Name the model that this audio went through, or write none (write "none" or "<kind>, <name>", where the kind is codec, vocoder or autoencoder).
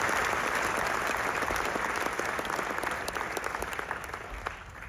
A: none